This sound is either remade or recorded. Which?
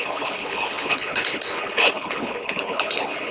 remade